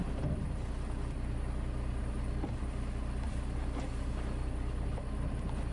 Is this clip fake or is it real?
real